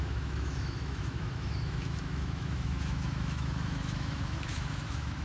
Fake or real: fake